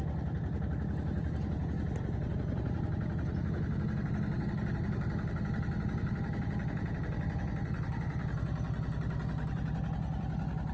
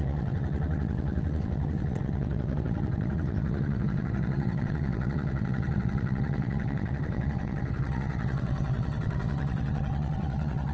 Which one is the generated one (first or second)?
second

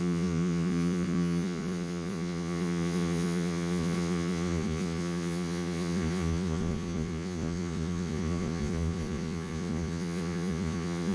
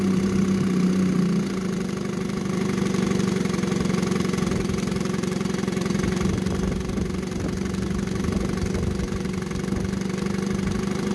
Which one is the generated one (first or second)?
first